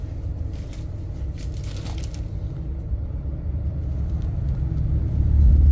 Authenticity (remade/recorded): recorded